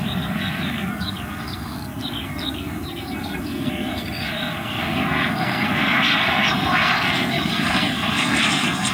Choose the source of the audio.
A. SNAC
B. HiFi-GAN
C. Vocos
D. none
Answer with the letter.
A